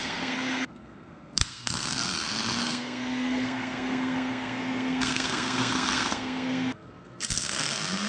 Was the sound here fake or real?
fake